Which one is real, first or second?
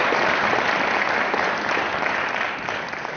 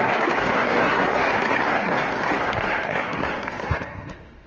first